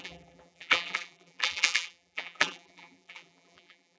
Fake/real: fake